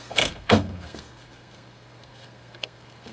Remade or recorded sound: remade